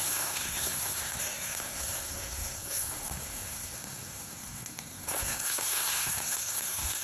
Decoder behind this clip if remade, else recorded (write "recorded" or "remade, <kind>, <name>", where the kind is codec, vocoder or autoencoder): remade, codec, SNAC